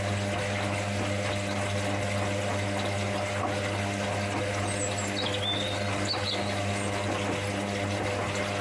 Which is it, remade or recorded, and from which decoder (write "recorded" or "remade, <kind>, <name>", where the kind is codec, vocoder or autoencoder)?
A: recorded